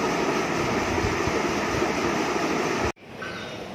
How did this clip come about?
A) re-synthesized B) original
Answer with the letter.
A